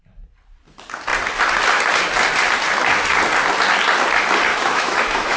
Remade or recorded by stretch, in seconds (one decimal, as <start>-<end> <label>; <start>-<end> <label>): 0.0-4.5 recorded; 4.5-5.4 remade